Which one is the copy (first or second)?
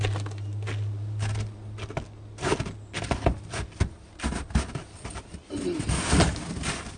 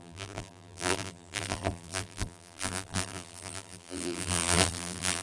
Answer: second